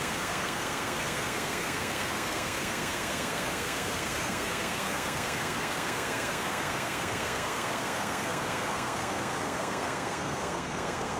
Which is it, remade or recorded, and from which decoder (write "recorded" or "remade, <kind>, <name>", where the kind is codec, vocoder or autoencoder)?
remade, codec, SNAC